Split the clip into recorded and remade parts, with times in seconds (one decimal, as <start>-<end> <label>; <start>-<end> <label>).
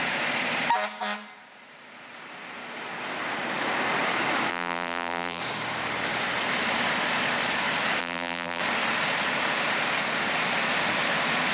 0.0-4.5 recorded; 4.5-5.4 remade; 5.4-8.0 recorded; 8.0-8.6 remade; 8.6-11.5 recorded